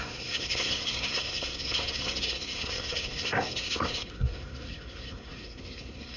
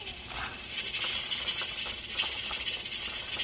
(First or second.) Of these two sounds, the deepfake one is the first